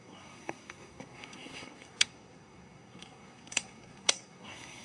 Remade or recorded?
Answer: remade